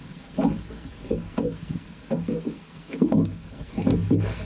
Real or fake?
fake